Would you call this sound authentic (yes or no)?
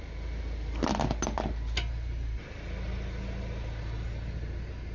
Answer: yes